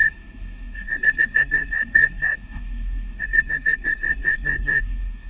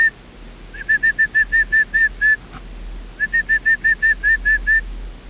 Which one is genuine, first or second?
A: second